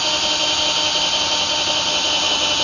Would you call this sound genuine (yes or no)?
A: yes